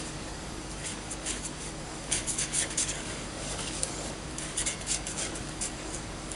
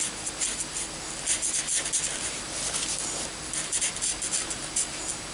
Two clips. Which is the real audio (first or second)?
second